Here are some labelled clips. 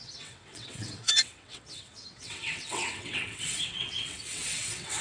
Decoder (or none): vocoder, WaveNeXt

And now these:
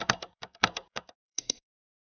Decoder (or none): codec, SNAC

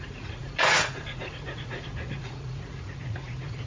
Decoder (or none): vocoder, Vocos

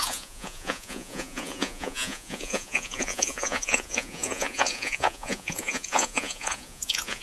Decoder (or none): vocoder, Vocos